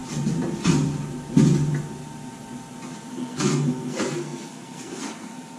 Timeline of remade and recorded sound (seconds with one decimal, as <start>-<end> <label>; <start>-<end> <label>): 0.0-3.1 recorded; 3.1-5.6 remade